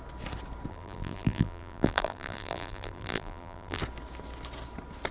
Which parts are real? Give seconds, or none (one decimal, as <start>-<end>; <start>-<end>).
0.0-0.7; 3.8-5.1